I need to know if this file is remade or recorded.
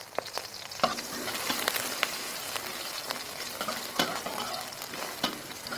recorded